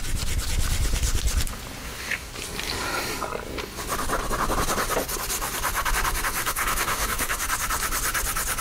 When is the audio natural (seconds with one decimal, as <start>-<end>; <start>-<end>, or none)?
0.0-1.8; 2.3-6.4; 7.4-8.6